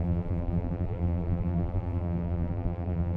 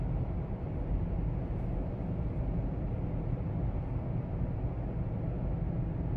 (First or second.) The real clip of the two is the second